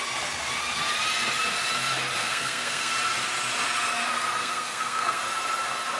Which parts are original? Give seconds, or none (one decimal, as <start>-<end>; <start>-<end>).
0.0-2.2; 2.9-4.4; 5.2-6.0